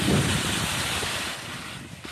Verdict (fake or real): real